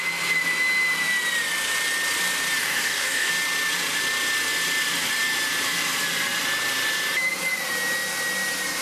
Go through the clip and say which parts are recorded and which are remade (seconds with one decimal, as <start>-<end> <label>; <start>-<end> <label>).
0.0-2.6 recorded; 2.6-3.3 remade; 3.3-8.8 recorded